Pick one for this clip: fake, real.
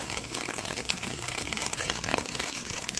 fake